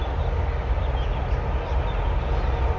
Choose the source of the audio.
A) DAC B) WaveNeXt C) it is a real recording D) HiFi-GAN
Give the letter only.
C